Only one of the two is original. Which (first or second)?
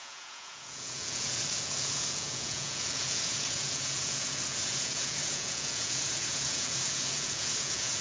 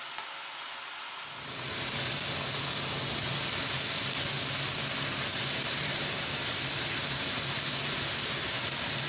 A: second